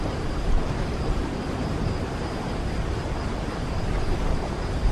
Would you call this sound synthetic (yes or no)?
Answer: yes